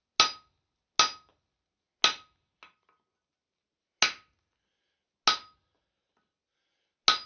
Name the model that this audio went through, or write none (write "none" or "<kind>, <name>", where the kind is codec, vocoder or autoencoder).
none